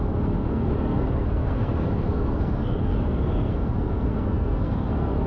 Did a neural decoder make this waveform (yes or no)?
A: yes